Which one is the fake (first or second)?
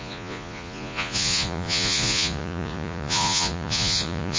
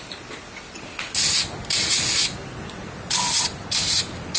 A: first